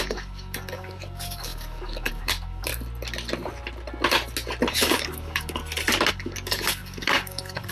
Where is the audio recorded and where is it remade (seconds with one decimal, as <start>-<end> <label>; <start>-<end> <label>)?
0.0-2.7 remade; 2.7-4.7 recorded; 4.7-5.6 remade; 5.6-6.1 recorded; 6.1-7.7 remade